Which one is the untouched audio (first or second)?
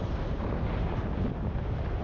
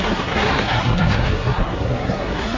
first